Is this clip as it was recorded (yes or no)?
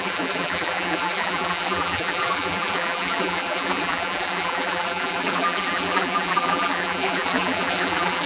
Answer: no